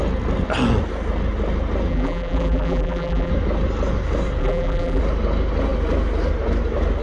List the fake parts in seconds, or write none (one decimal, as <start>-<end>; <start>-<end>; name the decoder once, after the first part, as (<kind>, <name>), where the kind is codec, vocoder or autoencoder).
1.9-3.3 (vocoder, BigVGAN v2); 4.4-5.0

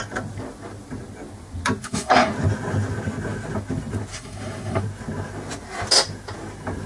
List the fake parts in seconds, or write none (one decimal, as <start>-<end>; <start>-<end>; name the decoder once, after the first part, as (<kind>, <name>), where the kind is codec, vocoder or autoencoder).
1.8-2.3 (codec, SNAC); 4.1-4.8

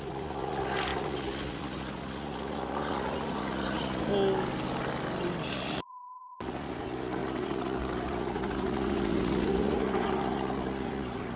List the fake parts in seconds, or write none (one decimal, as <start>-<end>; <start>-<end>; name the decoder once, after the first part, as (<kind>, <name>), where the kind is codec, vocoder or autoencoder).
0.0-4.1 (vocoder, Vocos); 5.5-11.4

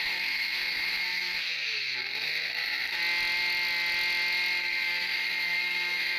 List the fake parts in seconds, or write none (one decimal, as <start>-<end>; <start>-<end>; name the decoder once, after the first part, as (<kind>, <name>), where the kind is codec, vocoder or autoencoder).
0.0-3.0 (codec, SNAC); 4.6-6.2